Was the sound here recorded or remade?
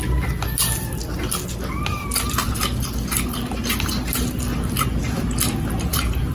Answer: recorded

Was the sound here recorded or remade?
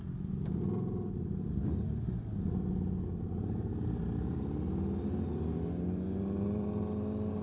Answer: recorded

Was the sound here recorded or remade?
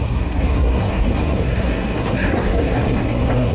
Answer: remade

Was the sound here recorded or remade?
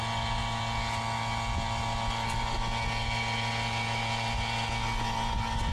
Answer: recorded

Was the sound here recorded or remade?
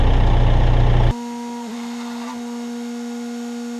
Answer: recorded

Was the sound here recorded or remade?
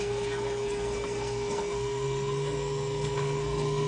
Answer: remade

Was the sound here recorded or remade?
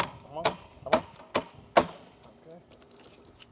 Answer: recorded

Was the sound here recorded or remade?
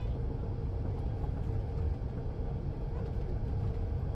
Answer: recorded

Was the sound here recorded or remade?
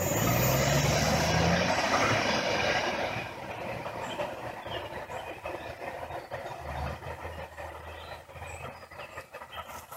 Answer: recorded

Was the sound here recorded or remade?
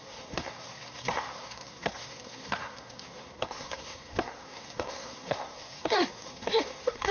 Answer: remade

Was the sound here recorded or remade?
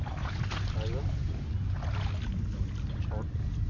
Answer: recorded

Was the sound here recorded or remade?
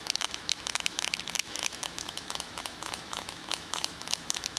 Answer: remade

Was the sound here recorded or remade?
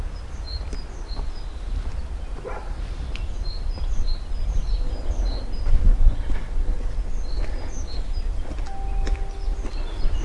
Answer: recorded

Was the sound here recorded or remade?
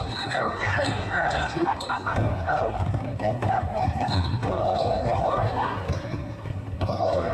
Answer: remade